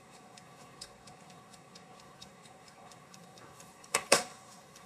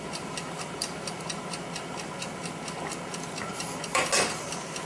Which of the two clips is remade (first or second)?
first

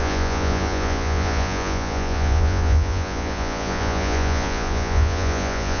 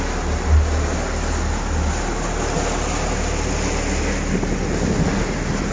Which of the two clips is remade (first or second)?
first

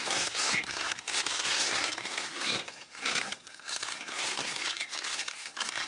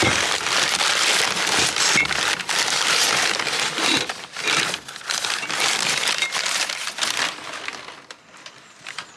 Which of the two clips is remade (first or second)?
first